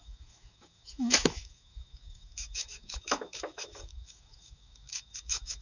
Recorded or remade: remade